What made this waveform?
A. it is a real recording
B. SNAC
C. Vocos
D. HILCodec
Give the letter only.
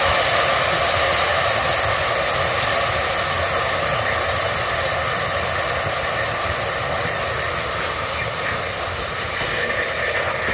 A